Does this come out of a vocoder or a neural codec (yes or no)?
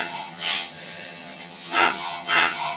yes